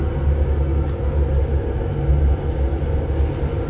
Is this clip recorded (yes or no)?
yes